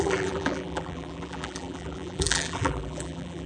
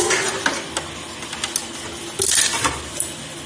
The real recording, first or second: second